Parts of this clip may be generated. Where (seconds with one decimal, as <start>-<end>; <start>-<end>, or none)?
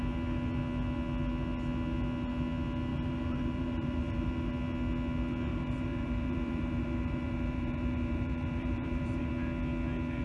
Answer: 2.9-4.5; 5.5-9.3